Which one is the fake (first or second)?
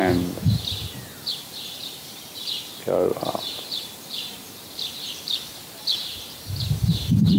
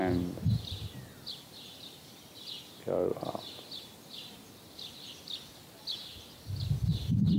first